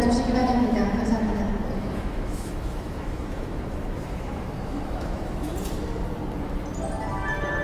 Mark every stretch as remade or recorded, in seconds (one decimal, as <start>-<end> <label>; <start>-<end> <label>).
0.0-0.4 recorded; 0.4-1.4 remade; 1.4-1.8 recorded; 1.8-5.5 remade; 5.5-7.6 recorded